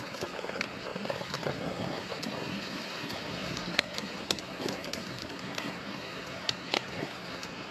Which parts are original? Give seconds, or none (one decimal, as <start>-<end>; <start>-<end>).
none